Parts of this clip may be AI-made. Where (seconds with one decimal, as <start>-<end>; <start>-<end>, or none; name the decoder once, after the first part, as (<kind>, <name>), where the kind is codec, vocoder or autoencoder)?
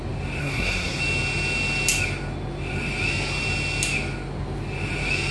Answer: 0.4-1.0 (codec, SNAC)